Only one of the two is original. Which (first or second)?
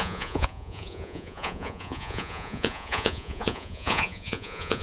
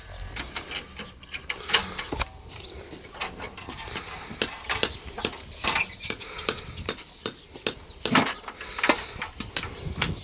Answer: second